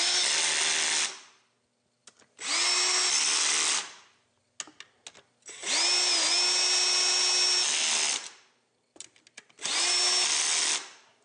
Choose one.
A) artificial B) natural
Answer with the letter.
B